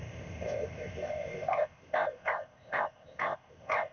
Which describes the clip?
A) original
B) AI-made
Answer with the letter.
B